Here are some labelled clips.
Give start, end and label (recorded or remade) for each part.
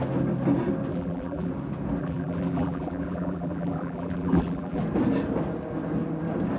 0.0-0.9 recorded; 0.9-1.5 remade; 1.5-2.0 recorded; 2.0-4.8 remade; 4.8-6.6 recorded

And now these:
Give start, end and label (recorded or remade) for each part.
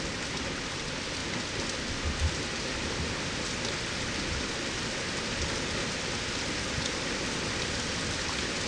0.0-8.7 recorded